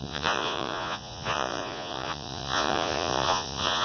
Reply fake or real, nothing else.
fake